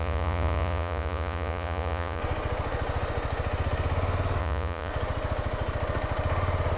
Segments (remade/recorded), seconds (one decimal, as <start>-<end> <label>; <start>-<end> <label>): 0.0-2.2 remade; 2.2-4.4 recorded; 4.4-4.9 remade; 4.9-6.8 recorded